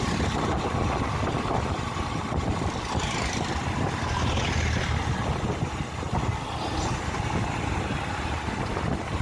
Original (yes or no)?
yes